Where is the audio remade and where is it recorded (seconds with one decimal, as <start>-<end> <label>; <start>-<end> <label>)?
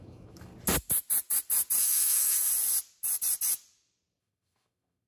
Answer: 0.0-0.5 remade; 0.5-1.8 recorded; 1.8-2.5 remade; 2.5-4.2 recorded; 4.2-5.1 remade